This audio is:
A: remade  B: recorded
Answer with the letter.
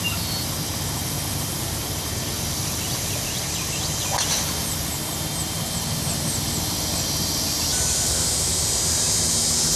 B